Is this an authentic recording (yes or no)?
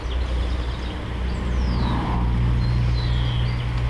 yes